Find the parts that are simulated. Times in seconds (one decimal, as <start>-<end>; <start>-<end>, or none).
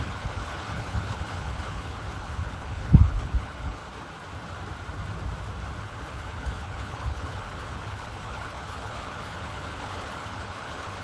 0.0-3.8; 5.8-11.0